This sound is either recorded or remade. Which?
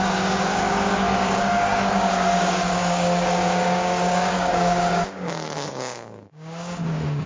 remade